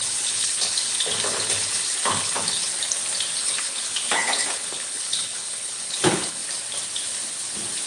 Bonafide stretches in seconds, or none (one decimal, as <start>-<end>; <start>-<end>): 2.7-3.4; 6.4-7.9